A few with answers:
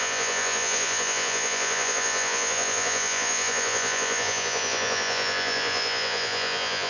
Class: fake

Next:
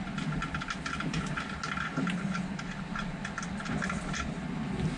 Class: real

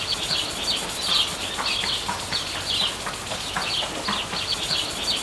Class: real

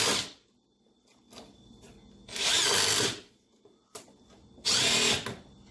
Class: real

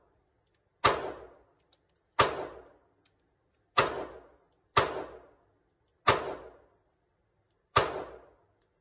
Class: real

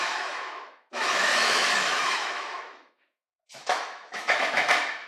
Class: fake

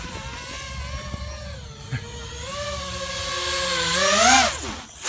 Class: real